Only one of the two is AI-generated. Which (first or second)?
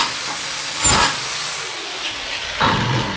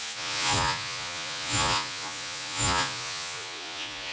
second